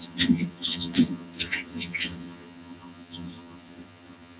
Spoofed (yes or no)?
yes